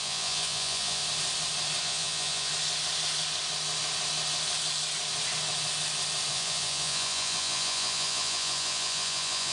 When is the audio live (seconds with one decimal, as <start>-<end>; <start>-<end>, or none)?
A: 1.0-1.8; 2.5-6.3

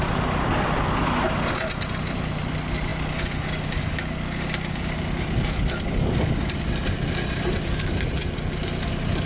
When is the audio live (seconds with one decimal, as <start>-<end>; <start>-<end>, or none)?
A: 0.0-9.3

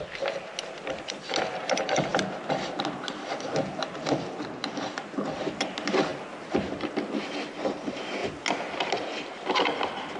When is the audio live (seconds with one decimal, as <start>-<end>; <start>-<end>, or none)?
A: 0.0-10.2

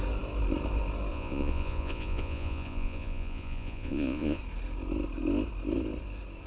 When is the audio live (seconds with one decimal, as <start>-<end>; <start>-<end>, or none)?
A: 0.0-1.1; 4.4-6.5

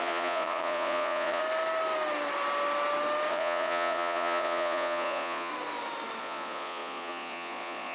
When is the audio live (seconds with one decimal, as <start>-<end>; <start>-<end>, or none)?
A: 1.4-3.3; 5.5-6.2

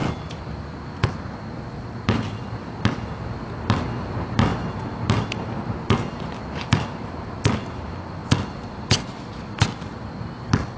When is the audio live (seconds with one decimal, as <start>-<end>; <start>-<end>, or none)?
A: 0.0-10.8

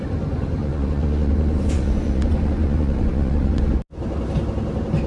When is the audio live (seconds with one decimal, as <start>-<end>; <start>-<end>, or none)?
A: 0.0-0.6; 3.7-5.1